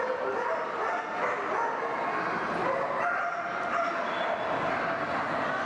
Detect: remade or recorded recorded